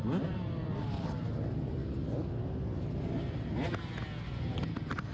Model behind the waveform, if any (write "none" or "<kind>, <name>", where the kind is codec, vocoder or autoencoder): none